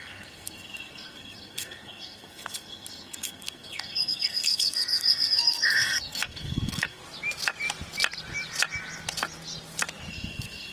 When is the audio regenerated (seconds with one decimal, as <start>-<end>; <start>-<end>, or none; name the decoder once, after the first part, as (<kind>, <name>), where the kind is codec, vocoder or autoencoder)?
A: 0.0-7.0 (codec, SNAC); 10.1-10.7